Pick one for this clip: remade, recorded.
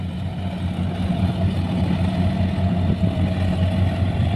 recorded